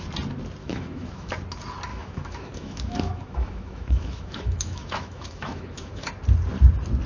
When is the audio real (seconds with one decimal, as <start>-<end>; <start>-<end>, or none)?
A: 0.0-0.6; 1.3-1.9; 6.1-7.1